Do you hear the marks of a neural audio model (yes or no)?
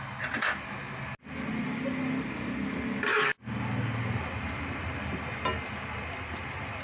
no